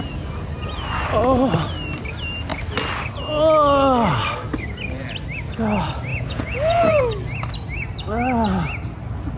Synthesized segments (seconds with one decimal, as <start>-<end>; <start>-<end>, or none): 6.1-7.0